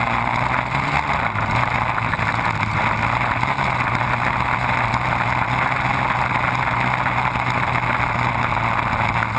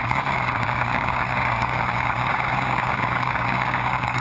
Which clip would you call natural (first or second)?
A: first